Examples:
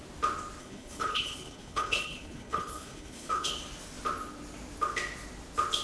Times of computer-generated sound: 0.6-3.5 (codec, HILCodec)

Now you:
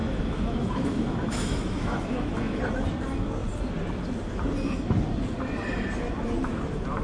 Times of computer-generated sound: 0.0-2.6 (autoencoder, DAC-VAE)

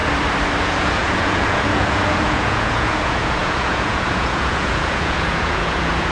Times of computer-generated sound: 0.6-6.1 (vocoder, Vocos)

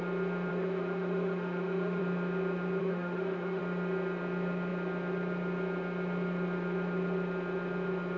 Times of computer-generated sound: 0.5-2.0 (autoencoder, DAC-VAE); 2.8-3.6

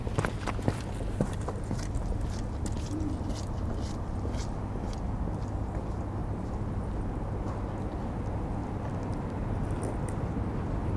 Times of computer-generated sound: 6.2-6.7 (vocoder, BigVGAN v2); 8.6-9.6

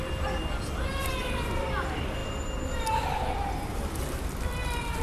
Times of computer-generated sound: none

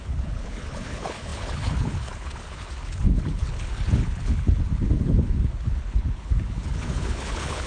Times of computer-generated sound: 0.0-7.7 (codec, HILCodec)

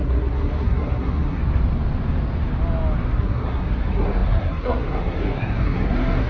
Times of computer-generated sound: 0.0-1.4 (codec, SNAC); 3.2-6.3